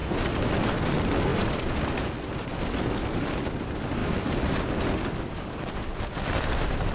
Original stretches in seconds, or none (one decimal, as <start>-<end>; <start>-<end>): 0.9-4.0; 4.6-6.9